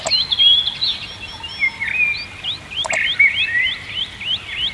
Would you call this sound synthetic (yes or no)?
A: no